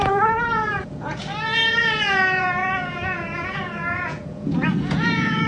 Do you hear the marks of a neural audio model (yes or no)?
yes